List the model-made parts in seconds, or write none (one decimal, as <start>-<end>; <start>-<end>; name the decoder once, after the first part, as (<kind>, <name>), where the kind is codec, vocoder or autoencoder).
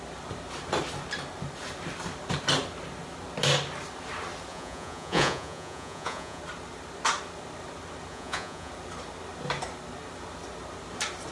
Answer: 4.5-6.4 (vocoder, Vocos); 8.1-8.7